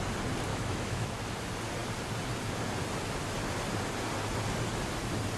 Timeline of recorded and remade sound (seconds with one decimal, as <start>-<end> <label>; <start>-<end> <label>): 0.0-0.5 recorded; 0.5-1.2 remade; 1.2-5.4 recorded